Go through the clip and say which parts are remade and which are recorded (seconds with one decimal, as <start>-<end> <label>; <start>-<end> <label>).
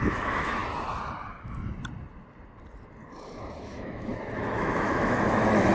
0.0-0.6 remade; 0.6-3.6 recorded; 3.6-5.7 remade